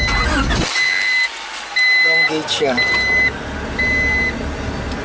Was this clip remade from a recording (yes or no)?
no